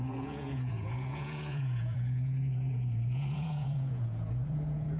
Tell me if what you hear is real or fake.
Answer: fake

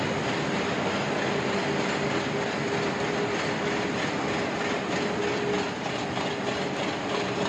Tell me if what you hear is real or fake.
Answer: real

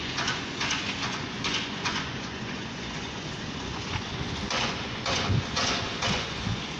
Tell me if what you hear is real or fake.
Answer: fake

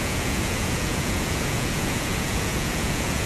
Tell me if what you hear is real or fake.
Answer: fake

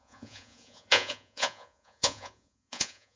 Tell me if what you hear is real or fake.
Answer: fake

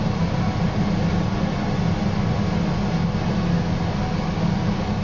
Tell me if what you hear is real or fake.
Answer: real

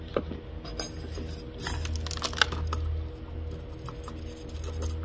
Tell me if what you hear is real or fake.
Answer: real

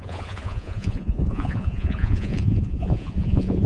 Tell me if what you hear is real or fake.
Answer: fake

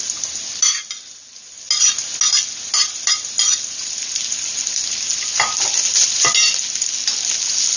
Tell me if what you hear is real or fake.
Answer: real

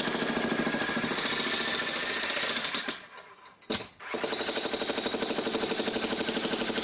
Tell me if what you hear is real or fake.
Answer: real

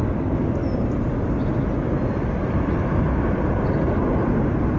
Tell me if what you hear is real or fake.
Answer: real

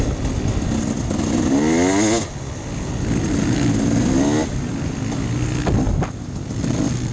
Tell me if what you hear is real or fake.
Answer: real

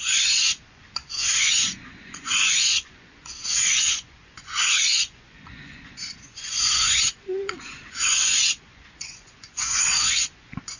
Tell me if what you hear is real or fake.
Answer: fake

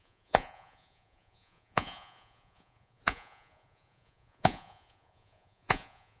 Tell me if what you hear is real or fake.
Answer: fake